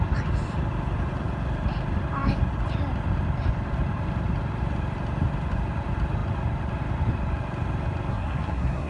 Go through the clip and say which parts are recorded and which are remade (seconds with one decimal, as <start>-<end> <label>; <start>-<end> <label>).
0.0-8.1 recorded; 8.1-8.9 remade